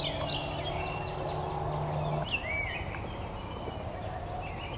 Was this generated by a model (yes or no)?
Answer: no